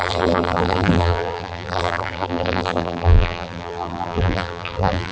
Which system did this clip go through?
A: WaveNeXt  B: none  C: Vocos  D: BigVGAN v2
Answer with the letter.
D